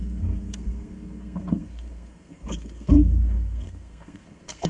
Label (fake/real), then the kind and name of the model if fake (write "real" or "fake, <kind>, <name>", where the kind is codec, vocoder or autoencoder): fake, codec, SNAC